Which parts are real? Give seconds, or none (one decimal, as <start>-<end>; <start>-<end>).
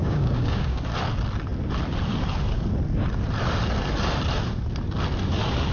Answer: 0.8-5.7